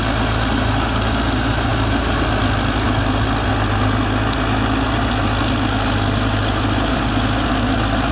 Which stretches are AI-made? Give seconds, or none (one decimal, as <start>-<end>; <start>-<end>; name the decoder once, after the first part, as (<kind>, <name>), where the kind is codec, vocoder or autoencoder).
none